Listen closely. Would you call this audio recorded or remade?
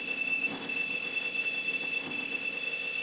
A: remade